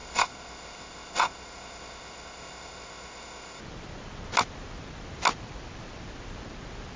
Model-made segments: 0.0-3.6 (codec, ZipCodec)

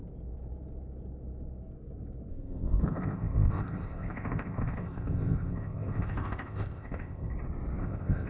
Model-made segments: 2.3-7.3 (codec, ZipCodec); 7.8-8.3

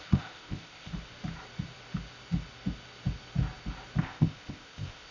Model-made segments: 0.0-0.9 (codec, ZipCodec); 4.0-5.1

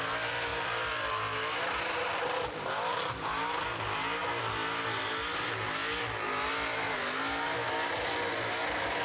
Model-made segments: none